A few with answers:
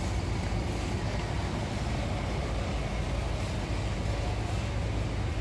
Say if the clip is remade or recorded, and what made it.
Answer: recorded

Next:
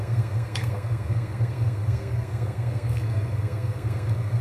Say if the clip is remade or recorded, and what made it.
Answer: remade, codec, SNAC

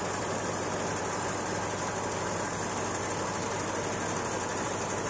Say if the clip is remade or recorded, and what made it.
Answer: recorded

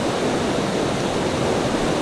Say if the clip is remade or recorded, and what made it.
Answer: recorded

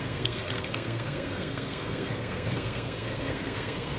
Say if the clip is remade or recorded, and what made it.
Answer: remade, codec, SNAC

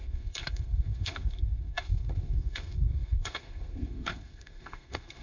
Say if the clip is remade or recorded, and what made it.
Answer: remade, codec, SNAC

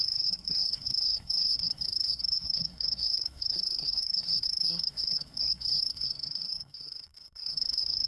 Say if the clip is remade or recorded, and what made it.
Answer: remade, codec, SNAC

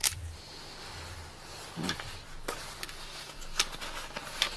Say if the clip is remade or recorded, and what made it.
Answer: recorded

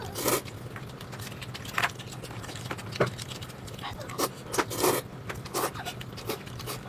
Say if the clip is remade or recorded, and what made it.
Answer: recorded